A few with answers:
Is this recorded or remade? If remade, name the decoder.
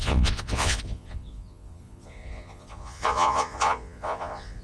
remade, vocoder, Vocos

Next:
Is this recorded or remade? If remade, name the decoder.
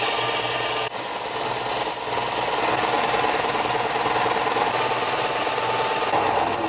recorded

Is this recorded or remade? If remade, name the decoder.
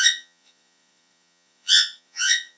remade, vocoder, Vocos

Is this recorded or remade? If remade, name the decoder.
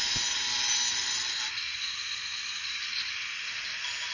recorded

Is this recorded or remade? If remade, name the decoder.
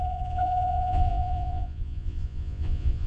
remade, vocoder, Vocos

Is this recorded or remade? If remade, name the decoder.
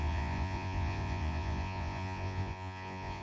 remade, vocoder, Vocos